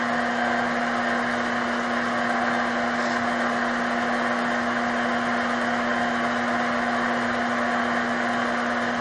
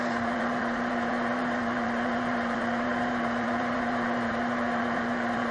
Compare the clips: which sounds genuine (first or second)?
first